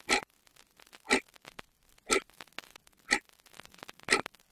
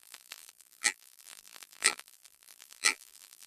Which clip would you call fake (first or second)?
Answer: second